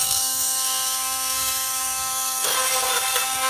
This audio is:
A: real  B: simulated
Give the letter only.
B